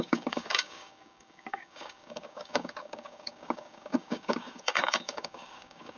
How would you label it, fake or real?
fake